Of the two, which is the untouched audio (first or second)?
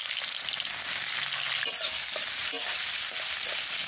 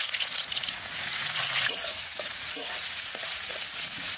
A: first